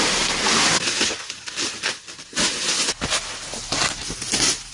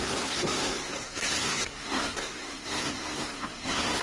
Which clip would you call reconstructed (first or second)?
second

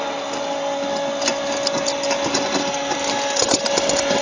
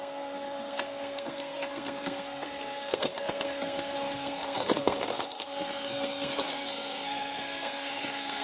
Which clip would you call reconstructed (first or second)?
second